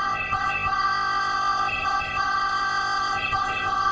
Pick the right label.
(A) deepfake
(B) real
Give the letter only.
A